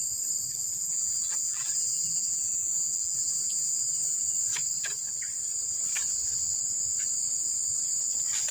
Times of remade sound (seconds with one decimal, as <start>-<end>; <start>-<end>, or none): 0.5-4.2